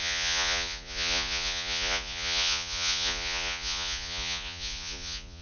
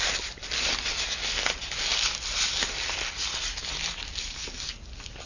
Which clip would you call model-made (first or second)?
first